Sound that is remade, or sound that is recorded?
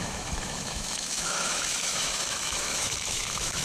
remade